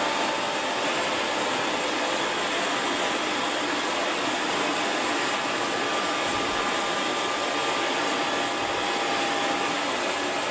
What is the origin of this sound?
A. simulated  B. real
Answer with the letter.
B